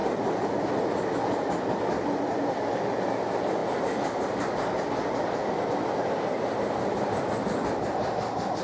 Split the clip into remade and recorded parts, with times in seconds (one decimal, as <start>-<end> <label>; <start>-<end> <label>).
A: 0.0-8.6 recorded